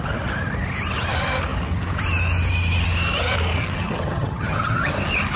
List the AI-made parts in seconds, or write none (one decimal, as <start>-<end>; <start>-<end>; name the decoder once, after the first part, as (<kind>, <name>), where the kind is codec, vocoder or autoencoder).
3.6-4.9 (vocoder, HiFi-GAN)